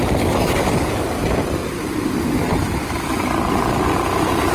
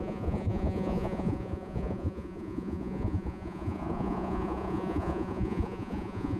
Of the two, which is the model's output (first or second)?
second